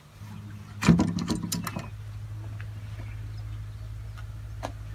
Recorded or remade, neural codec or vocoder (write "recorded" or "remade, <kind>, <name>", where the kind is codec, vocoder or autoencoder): recorded